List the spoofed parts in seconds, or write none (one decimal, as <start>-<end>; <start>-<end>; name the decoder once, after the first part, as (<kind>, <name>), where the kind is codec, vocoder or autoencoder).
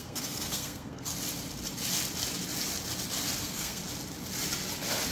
0.0-1.1 (codec, SNAC); 3.4-3.8